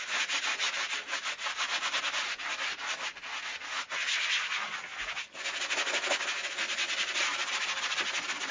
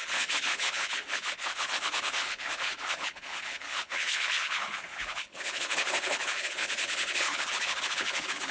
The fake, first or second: second